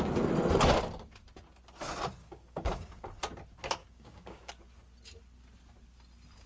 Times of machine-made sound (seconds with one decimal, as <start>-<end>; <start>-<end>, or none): 2.2-3.0; 3.8-4.5